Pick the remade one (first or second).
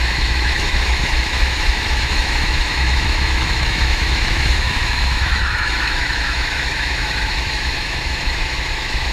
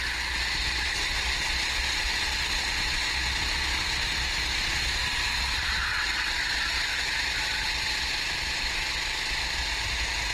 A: first